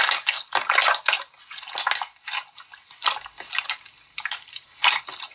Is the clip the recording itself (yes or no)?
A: yes